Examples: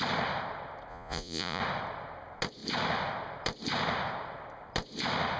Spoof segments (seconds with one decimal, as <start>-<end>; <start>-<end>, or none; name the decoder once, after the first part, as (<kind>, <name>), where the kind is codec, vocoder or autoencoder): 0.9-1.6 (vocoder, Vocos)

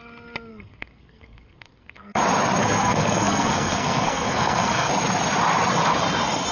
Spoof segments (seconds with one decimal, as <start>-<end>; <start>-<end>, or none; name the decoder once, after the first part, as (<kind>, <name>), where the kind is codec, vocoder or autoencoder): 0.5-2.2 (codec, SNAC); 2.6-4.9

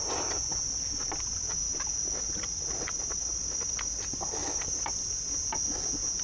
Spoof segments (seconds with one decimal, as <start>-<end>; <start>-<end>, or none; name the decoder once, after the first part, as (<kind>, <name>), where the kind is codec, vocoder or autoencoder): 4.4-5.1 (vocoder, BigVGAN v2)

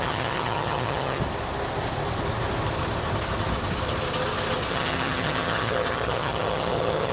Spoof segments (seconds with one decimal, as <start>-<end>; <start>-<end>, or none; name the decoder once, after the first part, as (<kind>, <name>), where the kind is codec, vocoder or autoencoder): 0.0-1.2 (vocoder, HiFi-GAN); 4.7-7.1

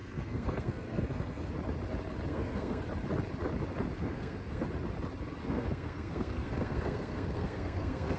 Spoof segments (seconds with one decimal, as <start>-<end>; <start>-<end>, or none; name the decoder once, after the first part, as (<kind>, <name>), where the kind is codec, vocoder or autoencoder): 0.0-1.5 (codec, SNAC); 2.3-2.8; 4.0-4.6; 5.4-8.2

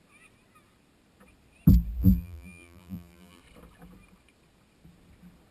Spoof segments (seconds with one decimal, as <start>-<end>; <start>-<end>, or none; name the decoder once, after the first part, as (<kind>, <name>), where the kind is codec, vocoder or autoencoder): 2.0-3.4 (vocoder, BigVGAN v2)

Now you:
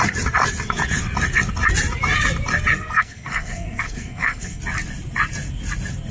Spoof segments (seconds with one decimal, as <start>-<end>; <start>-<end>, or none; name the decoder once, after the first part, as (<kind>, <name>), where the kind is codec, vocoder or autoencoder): 2.7-4.6 (codec, SNAC)